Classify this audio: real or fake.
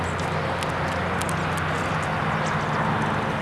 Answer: real